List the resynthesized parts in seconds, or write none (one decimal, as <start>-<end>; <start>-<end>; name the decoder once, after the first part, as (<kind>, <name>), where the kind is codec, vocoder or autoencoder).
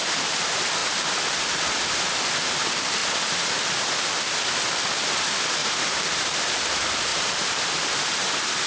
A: 0.8-1.7 (vocoder, BigVGAN v2); 5.6-6.4; 7.1-7.6